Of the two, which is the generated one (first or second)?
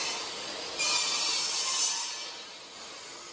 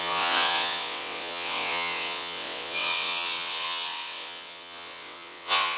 second